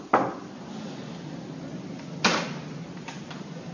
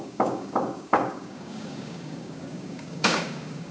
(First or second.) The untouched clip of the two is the first